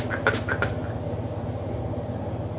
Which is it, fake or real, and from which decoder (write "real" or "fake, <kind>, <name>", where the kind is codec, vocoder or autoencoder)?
real